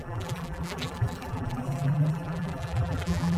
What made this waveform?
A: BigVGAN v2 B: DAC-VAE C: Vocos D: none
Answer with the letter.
A